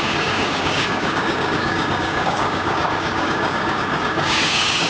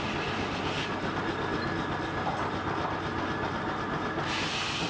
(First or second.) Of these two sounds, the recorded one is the second